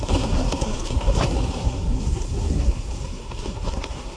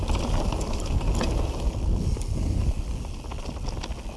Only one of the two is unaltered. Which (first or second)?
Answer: second